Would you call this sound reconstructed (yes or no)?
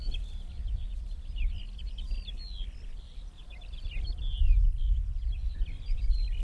no